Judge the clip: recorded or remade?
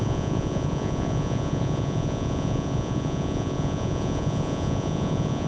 remade